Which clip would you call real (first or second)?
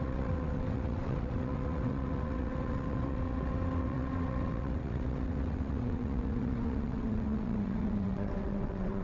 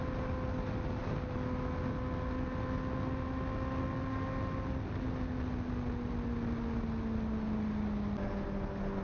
second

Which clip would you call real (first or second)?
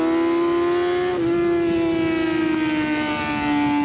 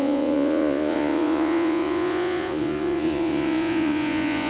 first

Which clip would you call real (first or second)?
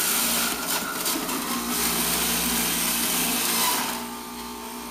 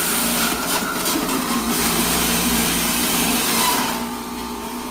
first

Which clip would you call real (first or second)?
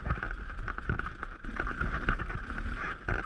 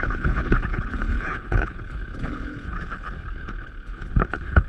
first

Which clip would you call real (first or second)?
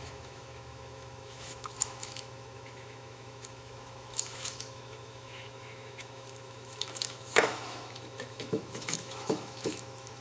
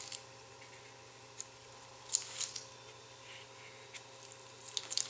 second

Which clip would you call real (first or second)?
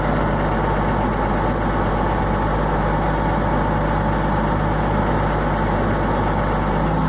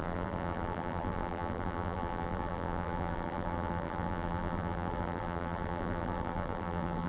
first